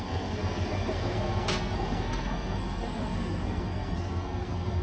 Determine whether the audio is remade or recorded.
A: remade